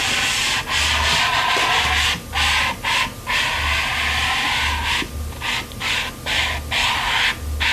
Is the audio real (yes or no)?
yes